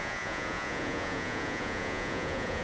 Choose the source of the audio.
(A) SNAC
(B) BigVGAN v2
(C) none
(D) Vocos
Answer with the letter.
D